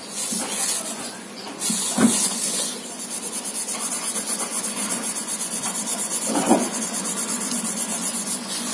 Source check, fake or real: fake